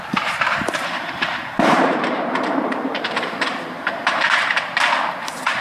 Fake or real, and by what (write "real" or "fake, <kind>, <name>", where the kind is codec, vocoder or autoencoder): fake, vocoder, BigVGAN v2